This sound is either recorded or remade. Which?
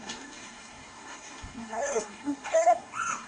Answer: remade